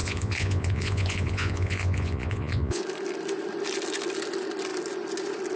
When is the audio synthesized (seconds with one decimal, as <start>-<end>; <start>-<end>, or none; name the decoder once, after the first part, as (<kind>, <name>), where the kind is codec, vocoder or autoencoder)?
0.0-2.8 (vocoder, Vocos)